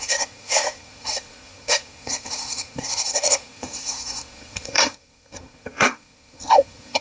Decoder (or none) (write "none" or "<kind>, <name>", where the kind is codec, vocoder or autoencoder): codec, SNAC